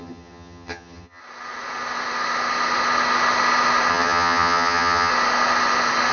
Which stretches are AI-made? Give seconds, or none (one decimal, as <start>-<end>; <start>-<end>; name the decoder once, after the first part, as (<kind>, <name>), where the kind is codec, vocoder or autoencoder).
0.0-1.2 (vocoder, HiFi-GAN); 3.9-5.1